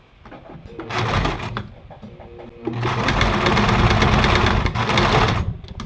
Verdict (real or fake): real